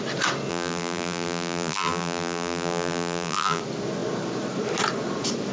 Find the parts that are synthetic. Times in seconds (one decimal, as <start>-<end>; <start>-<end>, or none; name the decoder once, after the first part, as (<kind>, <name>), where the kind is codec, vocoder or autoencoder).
0.5-3.6 (vocoder, BigVGAN v2)